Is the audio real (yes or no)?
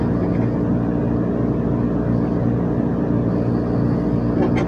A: yes